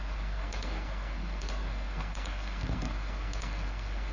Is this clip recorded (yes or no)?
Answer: no